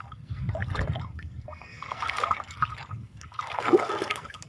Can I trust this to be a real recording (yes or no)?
no